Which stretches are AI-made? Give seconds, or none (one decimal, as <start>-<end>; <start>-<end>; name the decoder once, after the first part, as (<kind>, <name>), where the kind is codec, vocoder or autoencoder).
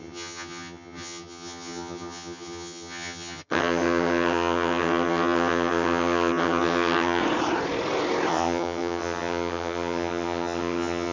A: 0.0-7.2 (vocoder, HiFi-GAN); 8.3-11.1